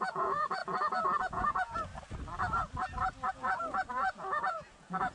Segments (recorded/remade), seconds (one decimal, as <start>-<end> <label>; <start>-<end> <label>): 0.0-0.6 remade; 0.6-1.2 recorded; 1.2-1.9 remade; 1.9-3.3 recorded; 3.3-5.1 remade